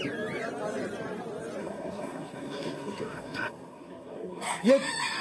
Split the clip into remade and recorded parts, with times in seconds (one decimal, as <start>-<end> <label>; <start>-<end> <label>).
0.0-1.6 recorded; 1.6-4.7 remade; 4.7-5.2 recorded